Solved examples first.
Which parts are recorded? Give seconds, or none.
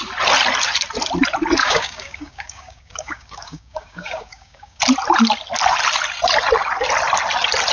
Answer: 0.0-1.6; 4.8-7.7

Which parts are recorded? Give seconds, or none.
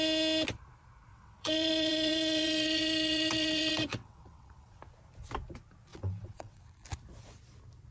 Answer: 0.0-1.1; 4.8-5.9; 6.6-7.9